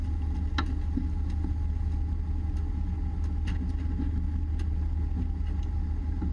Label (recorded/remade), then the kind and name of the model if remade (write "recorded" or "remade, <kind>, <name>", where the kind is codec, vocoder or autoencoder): recorded